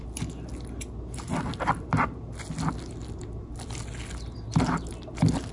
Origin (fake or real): real